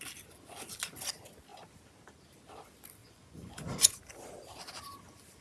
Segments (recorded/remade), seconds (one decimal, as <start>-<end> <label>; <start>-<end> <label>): 0.0-3.0 recorded; 3.0-4.0 remade; 4.0-5.4 recorded